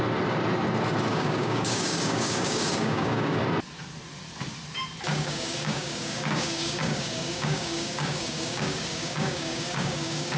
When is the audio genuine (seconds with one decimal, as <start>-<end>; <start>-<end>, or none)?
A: 0.0-1.1; 3.4-5.1